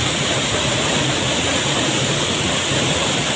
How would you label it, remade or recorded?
remade